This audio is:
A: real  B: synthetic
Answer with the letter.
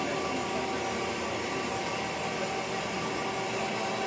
A